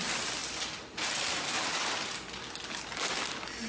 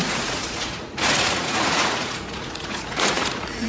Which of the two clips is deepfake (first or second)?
second